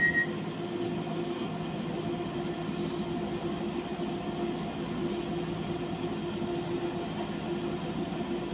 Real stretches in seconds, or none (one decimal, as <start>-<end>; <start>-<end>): 0.0-8.5